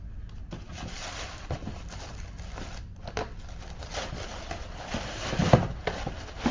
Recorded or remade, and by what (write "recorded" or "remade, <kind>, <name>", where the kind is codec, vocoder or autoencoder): recorded